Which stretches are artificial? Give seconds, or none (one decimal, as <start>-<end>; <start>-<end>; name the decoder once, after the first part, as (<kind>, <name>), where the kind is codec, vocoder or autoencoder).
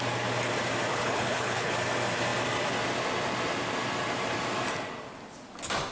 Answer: 0.9-1.7 (codec, HILCodec)